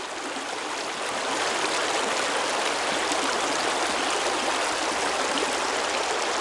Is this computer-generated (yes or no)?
no